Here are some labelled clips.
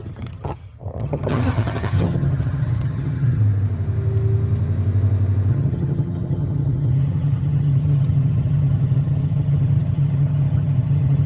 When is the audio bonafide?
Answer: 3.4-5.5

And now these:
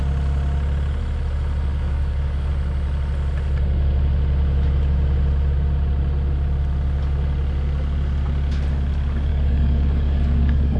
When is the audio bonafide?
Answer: 0.0-1.7; 2.5-9.3

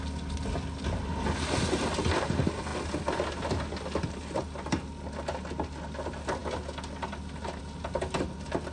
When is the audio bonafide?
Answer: 0.0-8.7

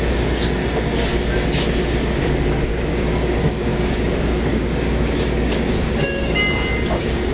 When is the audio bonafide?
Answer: 0.0-2.7; 6.4-7.3

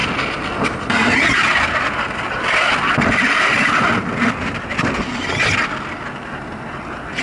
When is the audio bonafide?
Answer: 0.0-7.2

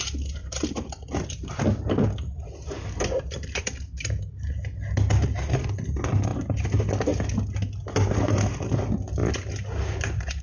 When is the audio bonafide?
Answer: 0.0-0.4; 4.5-10.4

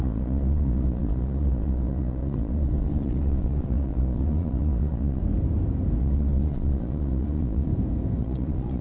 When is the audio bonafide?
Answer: 5.2-6.0; 7.7-8.2

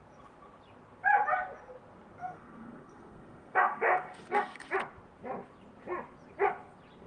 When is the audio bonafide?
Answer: 0.0-2.2; 4.7-7.1